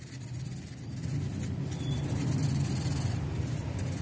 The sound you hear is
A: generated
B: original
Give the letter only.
A